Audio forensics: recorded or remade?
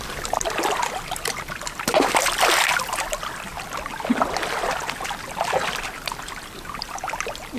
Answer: remade